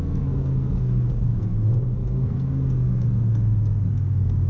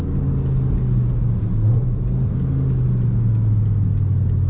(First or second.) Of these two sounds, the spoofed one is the first